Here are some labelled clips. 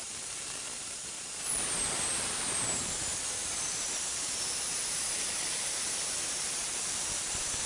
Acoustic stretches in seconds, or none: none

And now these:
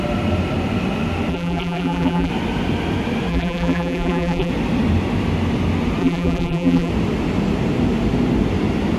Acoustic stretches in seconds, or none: 0.0-1.3; 2.3-3.3; 4.5-6.0; 6.9-9.0

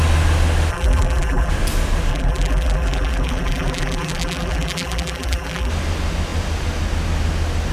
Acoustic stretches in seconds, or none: 0.0-0.7; 1.5-2.1; 5.7-7.7

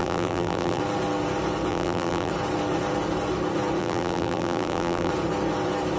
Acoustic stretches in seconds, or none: 0.8-1.7; 2.3-3.8; 5.1-6.0

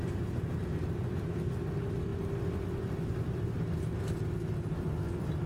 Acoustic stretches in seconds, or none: 0.0-5.5